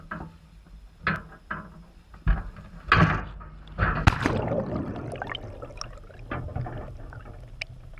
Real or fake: real